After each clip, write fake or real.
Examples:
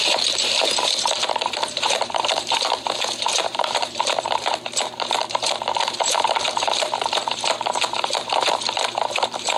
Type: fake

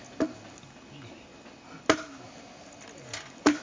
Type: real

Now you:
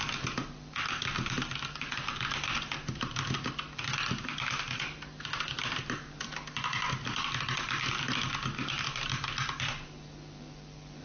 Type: real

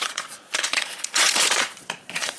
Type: fake